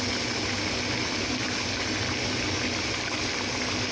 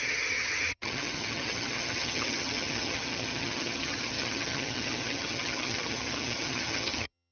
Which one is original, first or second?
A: first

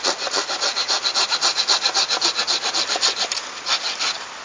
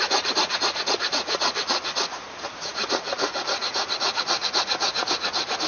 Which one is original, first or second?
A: first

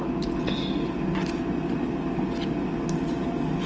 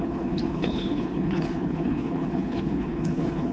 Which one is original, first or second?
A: first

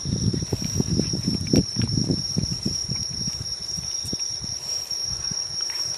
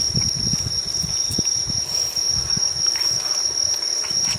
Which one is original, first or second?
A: second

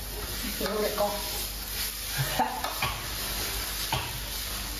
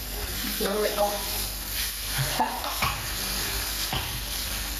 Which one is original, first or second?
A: first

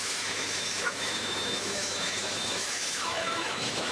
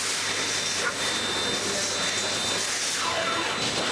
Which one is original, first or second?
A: second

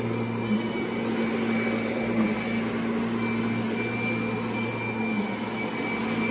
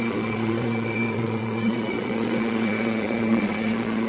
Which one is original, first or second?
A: first